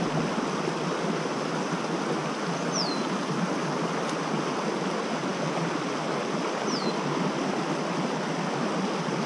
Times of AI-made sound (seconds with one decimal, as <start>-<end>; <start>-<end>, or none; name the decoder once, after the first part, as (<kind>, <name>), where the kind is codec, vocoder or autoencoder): none